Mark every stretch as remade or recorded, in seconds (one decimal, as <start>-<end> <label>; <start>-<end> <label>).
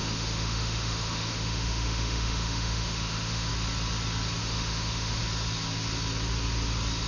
0.0-3.5 remade; 3.5-4.4 recorded; 4.4-5.2 remade; 5.2-7.1 recorded